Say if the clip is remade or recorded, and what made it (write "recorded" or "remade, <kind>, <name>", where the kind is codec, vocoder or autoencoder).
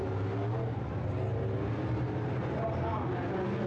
recorded